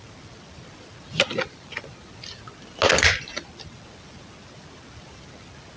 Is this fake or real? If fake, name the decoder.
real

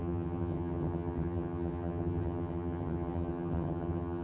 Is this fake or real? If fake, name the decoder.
fake, vocoder, HiFi-GAN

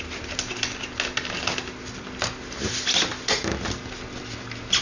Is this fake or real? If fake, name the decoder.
real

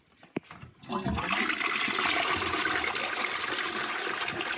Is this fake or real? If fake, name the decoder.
real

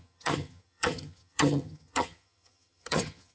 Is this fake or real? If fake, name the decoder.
fake, vocoder, HiFi-GAN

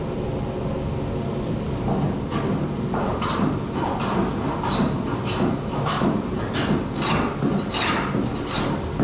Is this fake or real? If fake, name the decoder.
real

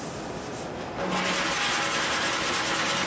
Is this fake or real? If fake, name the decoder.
real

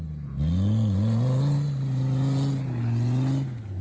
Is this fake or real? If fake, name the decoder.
real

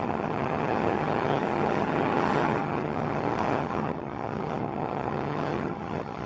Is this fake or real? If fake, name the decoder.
fake, vocoder, HiFi-GAN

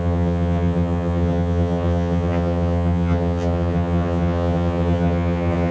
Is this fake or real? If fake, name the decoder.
fake, vocoder, HiFi-GAN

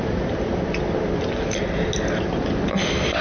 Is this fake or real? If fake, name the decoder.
real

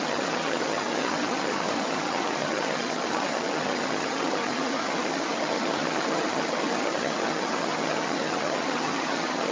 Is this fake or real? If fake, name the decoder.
fake, vocoder, HiFi-GAN